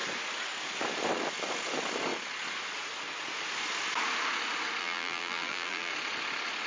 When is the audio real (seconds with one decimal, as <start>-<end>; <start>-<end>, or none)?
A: 0.0-4.8; 5.9-6.7